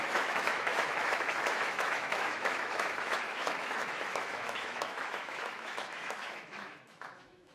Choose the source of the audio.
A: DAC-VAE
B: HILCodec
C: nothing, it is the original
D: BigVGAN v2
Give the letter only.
A